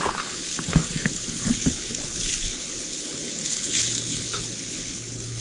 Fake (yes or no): yes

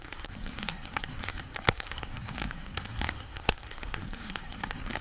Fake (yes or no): yes